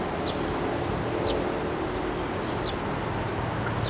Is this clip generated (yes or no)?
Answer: no